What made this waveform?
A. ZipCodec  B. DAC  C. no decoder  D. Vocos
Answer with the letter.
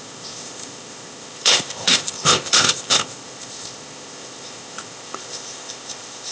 A